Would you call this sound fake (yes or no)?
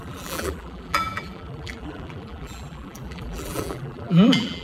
yes